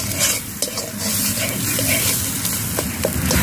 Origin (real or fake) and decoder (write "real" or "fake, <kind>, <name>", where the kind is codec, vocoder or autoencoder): fake, vocoder, BigVGAN v2